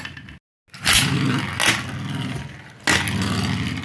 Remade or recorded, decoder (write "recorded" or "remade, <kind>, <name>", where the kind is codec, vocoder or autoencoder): recorded